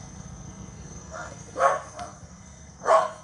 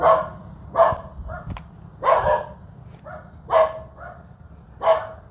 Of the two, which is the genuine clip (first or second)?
second